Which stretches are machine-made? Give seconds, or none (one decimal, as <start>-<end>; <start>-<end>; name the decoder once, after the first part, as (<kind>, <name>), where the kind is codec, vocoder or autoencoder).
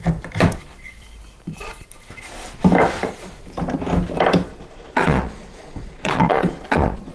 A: 4.5-7.1 (vocoder, Vocos)